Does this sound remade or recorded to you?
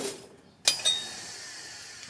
recorded